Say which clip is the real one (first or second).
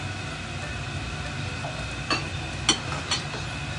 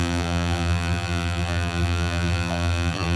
first